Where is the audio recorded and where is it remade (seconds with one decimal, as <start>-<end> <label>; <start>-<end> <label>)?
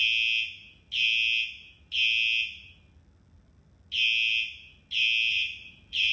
0.0-5.3 recorded; 5.3-6.1 remade